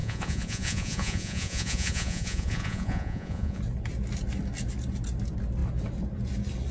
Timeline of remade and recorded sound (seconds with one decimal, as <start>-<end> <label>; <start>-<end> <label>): 0.0-3.6 remade; 3.6-6.7 recorded